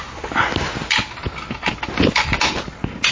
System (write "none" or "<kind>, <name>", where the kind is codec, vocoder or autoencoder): none